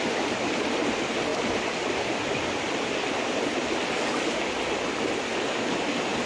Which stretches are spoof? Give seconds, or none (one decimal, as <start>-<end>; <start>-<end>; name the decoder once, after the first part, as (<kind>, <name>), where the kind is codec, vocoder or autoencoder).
none